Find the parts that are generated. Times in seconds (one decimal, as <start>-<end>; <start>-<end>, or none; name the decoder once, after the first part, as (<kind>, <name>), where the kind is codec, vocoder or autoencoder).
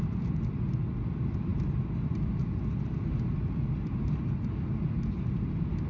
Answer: none